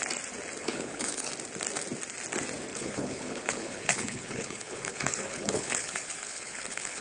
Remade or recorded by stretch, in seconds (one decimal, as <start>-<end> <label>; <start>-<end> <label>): 0.0-0.6 recorded; 0.6-1.3 remade; 1.3-2.7 recorded; 2.7-7.0 remade